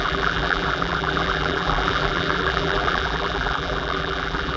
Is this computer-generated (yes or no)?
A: yes